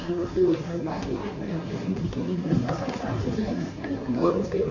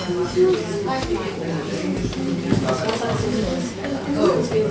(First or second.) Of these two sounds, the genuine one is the second